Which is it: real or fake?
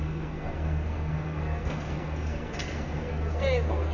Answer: fake